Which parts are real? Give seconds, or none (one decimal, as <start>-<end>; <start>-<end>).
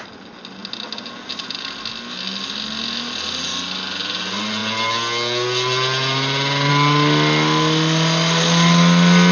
0.0-9.3